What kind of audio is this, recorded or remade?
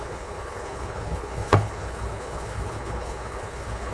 remade